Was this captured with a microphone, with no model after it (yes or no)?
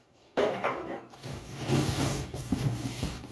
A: no